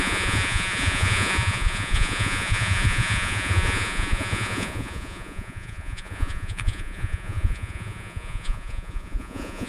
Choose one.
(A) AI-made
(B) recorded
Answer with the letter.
A